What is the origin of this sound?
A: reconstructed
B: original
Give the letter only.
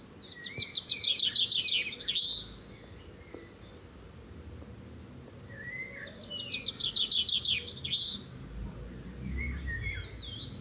B